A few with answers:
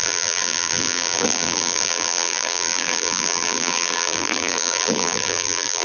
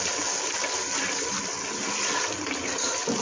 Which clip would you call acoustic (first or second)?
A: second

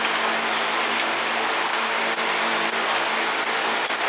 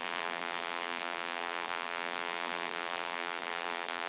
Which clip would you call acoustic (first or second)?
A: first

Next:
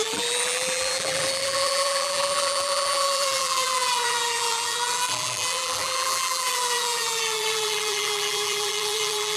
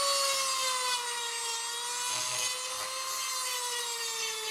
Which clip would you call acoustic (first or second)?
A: second